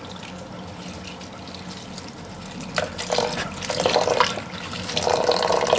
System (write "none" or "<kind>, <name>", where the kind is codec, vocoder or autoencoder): none